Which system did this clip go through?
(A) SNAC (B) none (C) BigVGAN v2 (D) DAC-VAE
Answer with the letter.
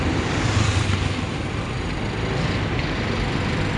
C